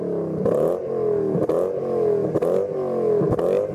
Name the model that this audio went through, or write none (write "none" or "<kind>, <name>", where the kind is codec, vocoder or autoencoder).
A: none